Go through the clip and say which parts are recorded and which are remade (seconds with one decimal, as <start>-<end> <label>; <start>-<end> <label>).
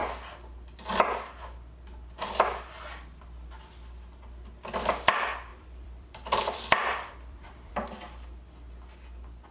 0.0-5.5 recorded; 5.5-7.7 remade; 7.7-9.5 recorded